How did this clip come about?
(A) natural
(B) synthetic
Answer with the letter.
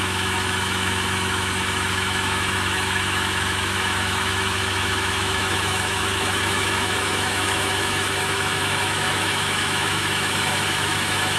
B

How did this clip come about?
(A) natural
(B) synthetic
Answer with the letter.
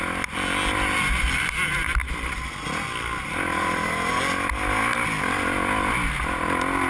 A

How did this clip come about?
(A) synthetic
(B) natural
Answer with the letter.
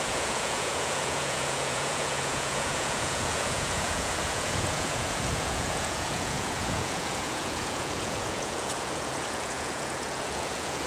A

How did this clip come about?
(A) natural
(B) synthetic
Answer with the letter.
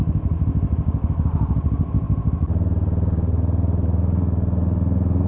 A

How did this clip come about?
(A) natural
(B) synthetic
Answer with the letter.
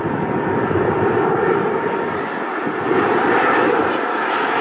A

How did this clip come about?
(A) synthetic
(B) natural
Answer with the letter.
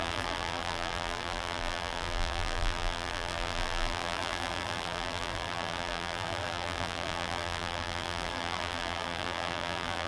A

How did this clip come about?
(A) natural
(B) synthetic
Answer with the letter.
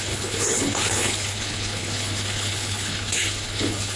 B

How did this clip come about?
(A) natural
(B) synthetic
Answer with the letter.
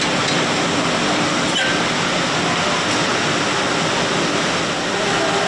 A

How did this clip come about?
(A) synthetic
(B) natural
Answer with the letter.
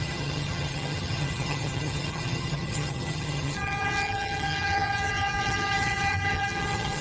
A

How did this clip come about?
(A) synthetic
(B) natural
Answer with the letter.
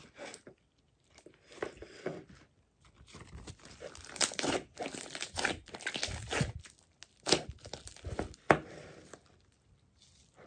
B